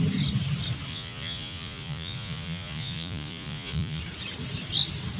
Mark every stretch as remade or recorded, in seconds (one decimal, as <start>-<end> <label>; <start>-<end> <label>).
0.0-0.9 recorded; 0.9-4.0 remade; 4.0-5.2 recorded